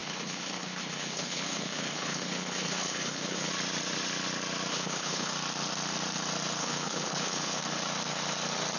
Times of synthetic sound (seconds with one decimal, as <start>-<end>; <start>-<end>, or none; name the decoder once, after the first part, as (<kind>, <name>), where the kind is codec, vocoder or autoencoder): 0.0-3.5 (codec, HILCodec); 4.7-5.3; 6.6-7.6